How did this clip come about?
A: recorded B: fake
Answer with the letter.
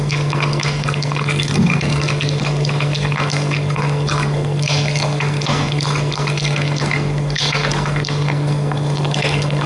B